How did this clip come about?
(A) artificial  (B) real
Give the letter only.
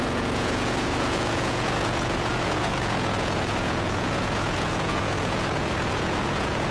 A